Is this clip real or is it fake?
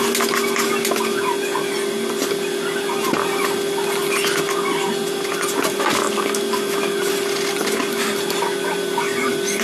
real